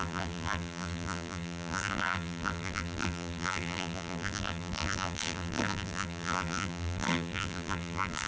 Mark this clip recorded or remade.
remade